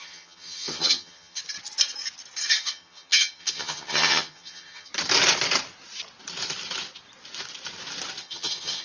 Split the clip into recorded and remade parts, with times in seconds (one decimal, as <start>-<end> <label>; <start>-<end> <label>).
0.0-1.4 remade; 1.4-2.5 recorded; 2.5-4.9 remade; 4.9-8.2 recorded; 8.2-8.8 remade